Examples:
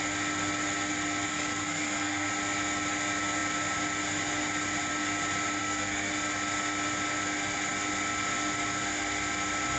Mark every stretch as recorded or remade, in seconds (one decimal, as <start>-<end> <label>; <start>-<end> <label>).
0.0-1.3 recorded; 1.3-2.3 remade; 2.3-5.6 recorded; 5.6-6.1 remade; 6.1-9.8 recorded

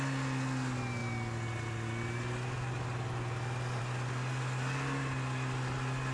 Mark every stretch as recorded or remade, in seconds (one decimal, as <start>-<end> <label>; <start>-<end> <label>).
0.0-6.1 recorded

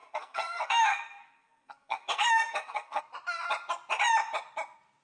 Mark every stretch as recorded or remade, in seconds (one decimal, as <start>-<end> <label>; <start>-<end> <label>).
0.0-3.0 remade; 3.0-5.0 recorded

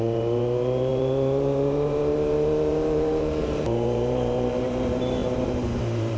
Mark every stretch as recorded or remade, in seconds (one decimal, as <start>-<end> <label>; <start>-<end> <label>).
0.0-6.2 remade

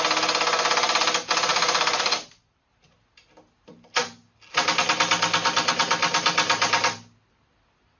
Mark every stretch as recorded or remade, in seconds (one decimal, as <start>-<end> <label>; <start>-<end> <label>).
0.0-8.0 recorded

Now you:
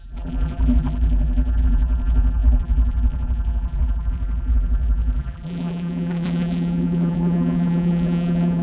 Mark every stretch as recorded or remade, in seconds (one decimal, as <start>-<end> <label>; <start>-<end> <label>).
0.0-8.6 remade